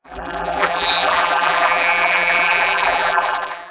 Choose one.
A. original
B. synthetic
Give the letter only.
B